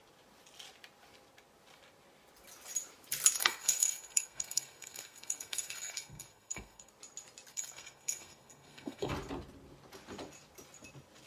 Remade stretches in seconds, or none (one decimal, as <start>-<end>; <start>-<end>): 3.4-6.9; 7.5-9.1